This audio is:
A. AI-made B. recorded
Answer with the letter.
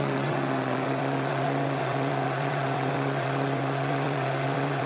A